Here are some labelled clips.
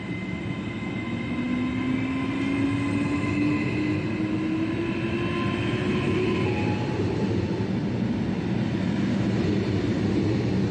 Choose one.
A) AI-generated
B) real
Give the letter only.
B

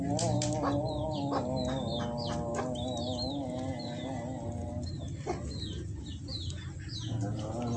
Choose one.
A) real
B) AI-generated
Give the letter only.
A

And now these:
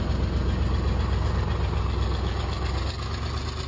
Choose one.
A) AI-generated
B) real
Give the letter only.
B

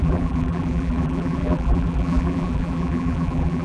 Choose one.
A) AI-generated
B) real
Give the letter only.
A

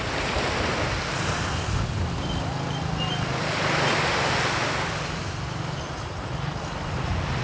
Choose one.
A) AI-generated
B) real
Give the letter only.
B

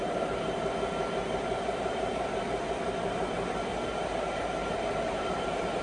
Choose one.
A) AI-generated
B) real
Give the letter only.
A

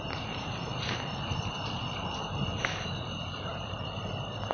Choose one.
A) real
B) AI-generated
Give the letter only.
B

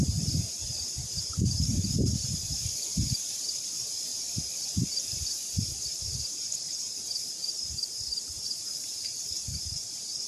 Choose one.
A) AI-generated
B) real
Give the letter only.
A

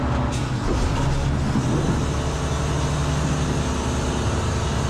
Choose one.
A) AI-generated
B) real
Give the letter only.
B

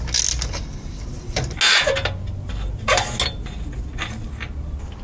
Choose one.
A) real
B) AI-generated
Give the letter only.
A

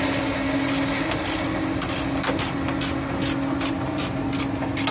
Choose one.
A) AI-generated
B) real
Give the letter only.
B